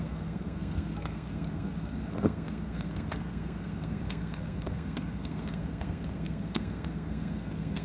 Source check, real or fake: fake